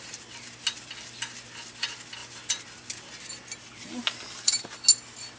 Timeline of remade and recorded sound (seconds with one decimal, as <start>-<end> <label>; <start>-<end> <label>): 0.0-5.4 recorded